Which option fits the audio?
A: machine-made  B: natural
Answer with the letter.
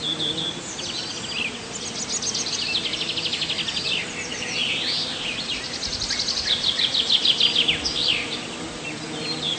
B